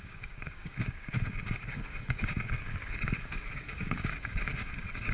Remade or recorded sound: remade